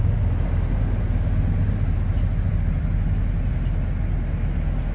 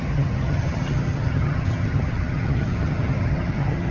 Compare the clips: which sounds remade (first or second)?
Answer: second